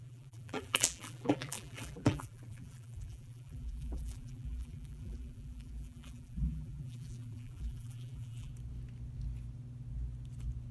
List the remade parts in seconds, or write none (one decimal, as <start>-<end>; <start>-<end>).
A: 0.0-8.5